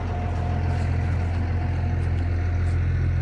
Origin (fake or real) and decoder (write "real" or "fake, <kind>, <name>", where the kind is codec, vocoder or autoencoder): real